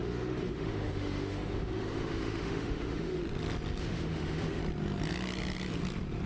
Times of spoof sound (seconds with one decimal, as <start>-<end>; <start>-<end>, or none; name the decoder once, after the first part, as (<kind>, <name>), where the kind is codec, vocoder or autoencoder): 0.0-3.2 (autoencoder, DAC-VAE); 3.8-4.6